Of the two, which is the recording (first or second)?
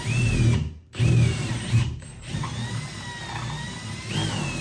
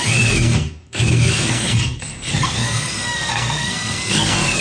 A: first